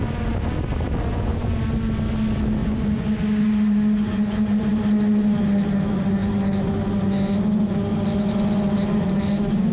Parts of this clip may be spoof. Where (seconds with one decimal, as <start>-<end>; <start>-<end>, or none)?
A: 1.1-1.6; 2.6-4.7